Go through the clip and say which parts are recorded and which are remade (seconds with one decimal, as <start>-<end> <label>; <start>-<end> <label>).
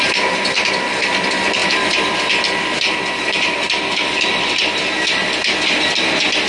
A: 0.0-1.6 recorded; 1.6-5.0 remade; 5.0-6.5 recorded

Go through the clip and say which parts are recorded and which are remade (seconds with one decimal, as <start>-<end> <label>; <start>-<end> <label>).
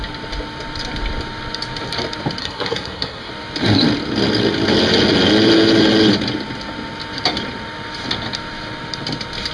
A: 0.0-2.4 recorded; 2.4-3.3 remade; 3.3-9.5 recorded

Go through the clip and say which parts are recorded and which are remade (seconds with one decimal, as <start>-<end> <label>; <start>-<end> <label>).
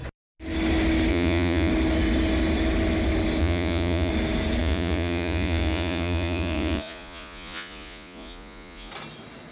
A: 0.0-1.1 recorded; 1.1-1.7 remade; 1.7-3.4 recorded; 3.4-4.1 remade; 4.1-4.6 recorded; 4.6-8.9 remade; 8.9-9.5 recorded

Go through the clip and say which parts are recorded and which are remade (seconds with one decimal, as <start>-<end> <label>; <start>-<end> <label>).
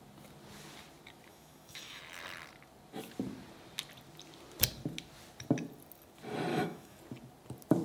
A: 0.0-1.3 recorded; 1.3-2.0 remade; 2.0-6.5 recorded; 6.5-7.0 remade; 7.0-7.8 recorded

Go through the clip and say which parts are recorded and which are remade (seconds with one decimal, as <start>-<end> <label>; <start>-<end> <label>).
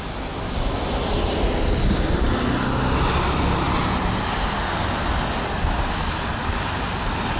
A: 0.0-7.4 recorded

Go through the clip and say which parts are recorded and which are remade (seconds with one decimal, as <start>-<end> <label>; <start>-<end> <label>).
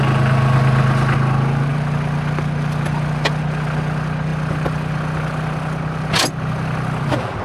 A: 0.0-7.4 recorded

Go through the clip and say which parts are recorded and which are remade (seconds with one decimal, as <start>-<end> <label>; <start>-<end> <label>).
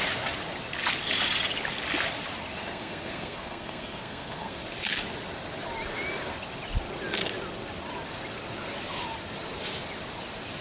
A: 0.0-2.6 recorded; 2.6-4.6 remade; 4.6-10.6 recorded